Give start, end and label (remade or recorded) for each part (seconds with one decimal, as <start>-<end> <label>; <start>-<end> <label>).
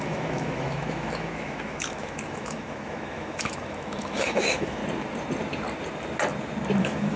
0.0-4.8 remade; 4.8-6.8 recorded; 6.8-7.2 remade